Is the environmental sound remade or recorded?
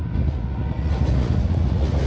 remade